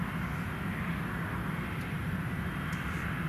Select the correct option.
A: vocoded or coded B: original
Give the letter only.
B